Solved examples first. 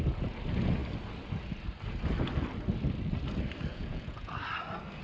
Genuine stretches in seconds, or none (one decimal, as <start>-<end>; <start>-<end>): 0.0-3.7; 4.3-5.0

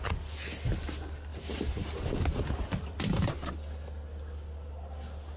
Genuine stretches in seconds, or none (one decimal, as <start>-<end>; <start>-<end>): 0.0-5.4

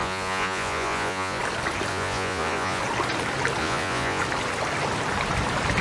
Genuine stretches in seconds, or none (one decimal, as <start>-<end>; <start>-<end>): 1.4-1.9; 2.8-3.6; 4.2-5.8

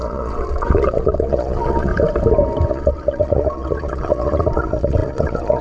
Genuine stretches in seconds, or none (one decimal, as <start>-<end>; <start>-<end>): 1.9-2.7

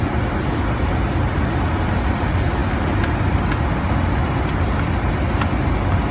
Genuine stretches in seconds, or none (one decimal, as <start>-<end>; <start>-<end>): 0.0-6.1